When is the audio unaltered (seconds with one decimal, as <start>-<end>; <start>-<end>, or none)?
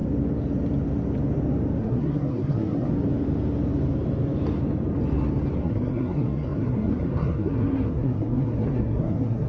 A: 0.0-1.8; 2.9-5.6